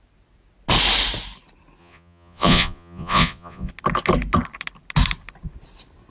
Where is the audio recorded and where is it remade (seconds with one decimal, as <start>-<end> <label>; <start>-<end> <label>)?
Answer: 0.0-1.8 recorded; 1.8-3.7 remade; 3.7-6.1 recorded